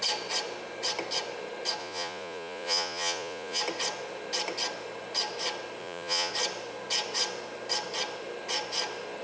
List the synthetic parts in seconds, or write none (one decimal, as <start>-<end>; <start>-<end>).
1.8-3.6; 5.8-6.3